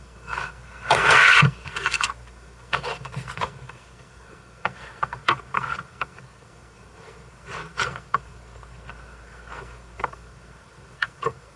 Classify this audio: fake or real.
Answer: fake